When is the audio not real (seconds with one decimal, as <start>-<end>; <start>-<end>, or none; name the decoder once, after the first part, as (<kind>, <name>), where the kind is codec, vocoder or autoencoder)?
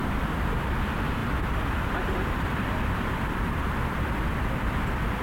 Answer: 0.0-0.5 (vocoder, BigVGAN v2); 1.2-4.3